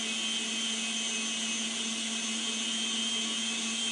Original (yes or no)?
yes